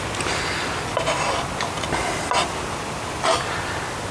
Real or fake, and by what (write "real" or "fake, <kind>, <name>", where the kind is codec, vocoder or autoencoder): real